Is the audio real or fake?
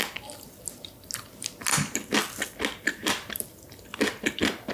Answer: real